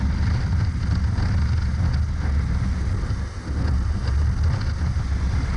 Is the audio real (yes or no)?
yes